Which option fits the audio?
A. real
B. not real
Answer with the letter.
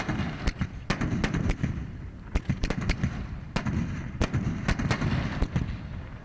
A